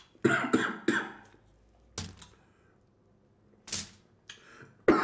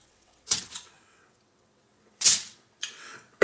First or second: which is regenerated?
second